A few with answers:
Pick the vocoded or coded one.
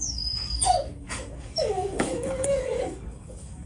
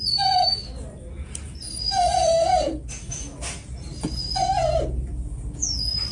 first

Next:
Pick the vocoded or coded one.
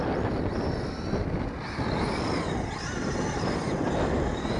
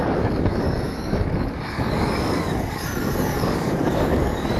second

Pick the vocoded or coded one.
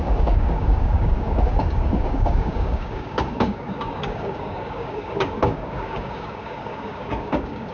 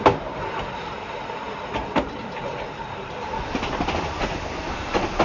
first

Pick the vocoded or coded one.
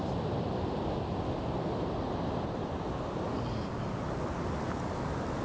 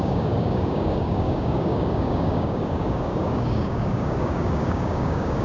second